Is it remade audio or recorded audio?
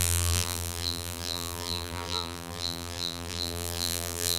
remade